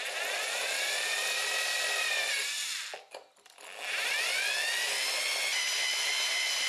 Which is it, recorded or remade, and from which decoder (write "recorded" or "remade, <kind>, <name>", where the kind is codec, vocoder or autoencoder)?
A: recorded